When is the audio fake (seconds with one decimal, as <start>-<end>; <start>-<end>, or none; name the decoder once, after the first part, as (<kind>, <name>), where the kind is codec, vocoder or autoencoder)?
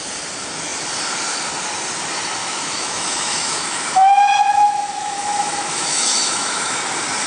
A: 2.4-6.8 (autoencoder, DAC-VAE)